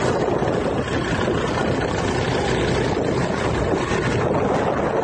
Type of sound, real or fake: real